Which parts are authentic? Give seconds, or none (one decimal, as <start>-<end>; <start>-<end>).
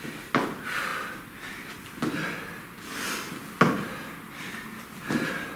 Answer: 0.0-5.6